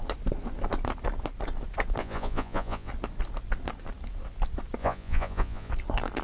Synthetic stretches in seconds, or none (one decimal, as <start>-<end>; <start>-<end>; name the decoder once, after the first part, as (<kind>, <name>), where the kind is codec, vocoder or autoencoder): 2.0-2.9 (vocoder, Vocos); 4.8-5.7